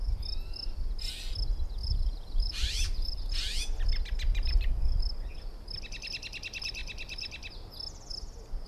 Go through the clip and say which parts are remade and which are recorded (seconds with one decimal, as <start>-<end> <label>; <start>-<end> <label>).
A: 0.0-1.8 recorded; 1.8-3.2 remade; 3.2-4.3 recorded; 4.3-5.0 remade; 5.0-8.7 recorded

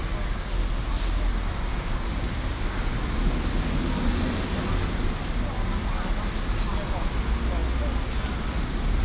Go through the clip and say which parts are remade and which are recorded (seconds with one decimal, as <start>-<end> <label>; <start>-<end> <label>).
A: 0.0-1.7 recorded; 1.7-2.9 remade; 2.9-9.0 recorded

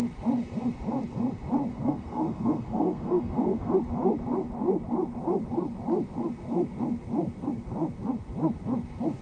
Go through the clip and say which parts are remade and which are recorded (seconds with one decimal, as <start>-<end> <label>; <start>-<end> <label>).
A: 0.0-1.7 recorded; 1.7-3.7 remade; 3.7-9.2 recorded

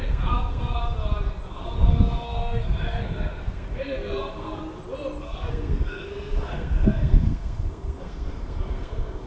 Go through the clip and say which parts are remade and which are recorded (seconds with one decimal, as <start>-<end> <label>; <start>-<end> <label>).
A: 0.0-0.8 remade; 0.8-1.5 recorded; 1.5-4.6 remade; 4.6-5.2 recorded; 5.2-9.3 remade

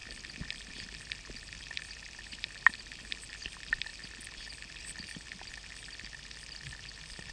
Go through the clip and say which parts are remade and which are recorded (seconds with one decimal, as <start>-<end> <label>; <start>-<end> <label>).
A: 0.0-3.9 remade; 3.9-4.8 recorded; 4.8-7.3 remade